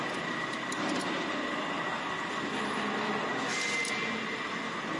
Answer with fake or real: real